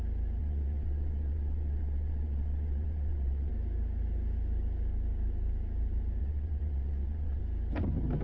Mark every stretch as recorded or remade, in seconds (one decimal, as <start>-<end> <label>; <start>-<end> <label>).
0.0-0.4 recorded; 0.4-3.5 remade; 3.5-6.2 recorded; 6.2-7.4 remade; 7.4-8.2 recorded